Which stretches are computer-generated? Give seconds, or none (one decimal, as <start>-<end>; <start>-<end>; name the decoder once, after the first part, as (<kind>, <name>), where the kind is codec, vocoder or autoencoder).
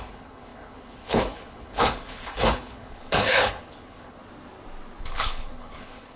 0.0-4.2 (codec, HILCodec); 5.0-6.2